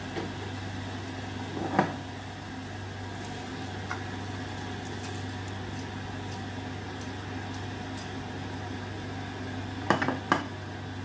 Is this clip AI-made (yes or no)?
no